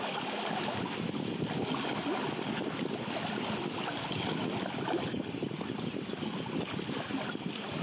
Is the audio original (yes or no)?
yes